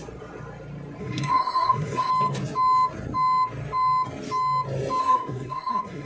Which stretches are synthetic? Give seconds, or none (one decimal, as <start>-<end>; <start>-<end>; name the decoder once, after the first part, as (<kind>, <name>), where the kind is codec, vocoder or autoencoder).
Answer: 1.0-2.1 (codec, SNAC); 5.0-6.1